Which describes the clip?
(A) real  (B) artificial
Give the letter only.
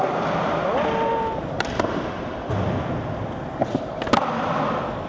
A